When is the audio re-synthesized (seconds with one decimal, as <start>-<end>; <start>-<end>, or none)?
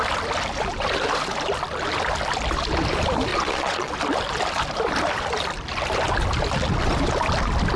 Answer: 3.3-3.9